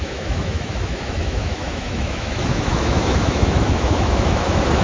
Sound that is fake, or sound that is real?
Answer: fake